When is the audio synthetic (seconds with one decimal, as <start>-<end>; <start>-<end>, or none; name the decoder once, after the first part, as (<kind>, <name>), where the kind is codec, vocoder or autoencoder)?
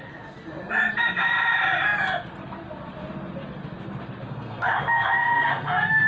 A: 4.3-6.1 (codec, SNAC)